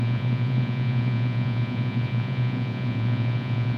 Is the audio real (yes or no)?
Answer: no